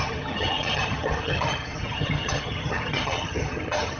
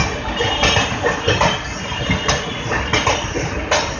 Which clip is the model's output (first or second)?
first